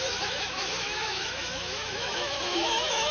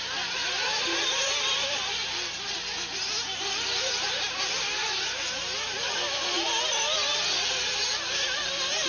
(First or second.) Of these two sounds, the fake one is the first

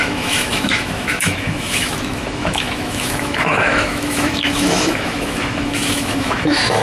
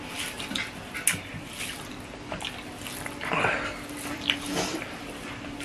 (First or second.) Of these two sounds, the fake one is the first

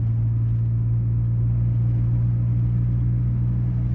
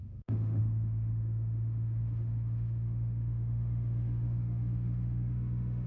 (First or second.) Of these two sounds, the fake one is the second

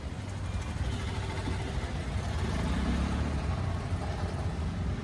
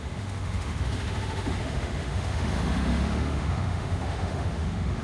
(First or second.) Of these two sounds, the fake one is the second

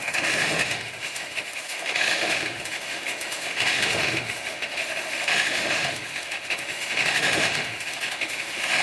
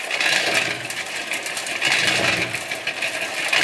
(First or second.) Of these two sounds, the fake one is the first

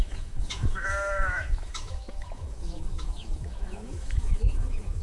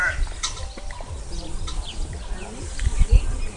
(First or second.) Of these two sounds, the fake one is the first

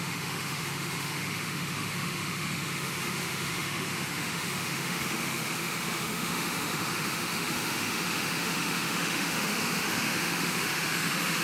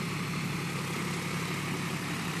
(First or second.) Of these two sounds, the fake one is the first